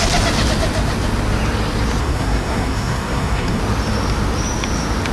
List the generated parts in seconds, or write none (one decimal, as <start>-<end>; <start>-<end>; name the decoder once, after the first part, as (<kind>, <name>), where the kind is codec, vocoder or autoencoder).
2.0-3.6 (codec, SNAC)